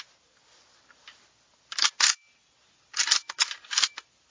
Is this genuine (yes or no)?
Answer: yes